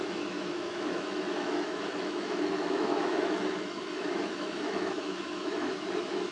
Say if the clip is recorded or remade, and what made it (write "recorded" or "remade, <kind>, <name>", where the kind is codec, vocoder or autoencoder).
remade, autoencoder, DAC-VAE